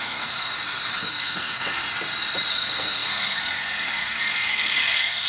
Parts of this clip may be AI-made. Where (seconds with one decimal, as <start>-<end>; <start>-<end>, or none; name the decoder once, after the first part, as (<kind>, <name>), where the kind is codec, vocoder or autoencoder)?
0.0-0.5 (codec, SNAC); 1.0-1.8; 2.5-5.3